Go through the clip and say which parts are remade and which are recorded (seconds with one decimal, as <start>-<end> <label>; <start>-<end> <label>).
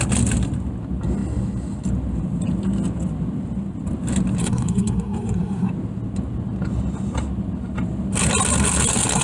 0.0-4.4 recorded; 4.4-5.7 remade; 5.7-9.2 recorded